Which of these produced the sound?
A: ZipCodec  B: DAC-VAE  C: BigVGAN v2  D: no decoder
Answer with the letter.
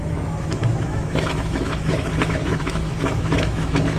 B